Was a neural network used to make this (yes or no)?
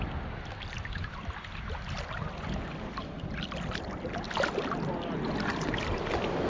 no